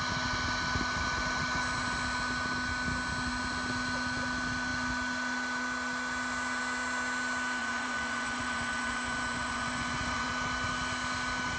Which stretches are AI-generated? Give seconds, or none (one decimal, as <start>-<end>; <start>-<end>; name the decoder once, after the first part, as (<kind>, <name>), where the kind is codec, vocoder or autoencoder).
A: 7.6-10.3 (vocoder, Vocos)